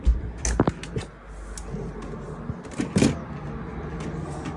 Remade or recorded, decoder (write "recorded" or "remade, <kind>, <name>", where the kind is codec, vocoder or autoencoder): recorded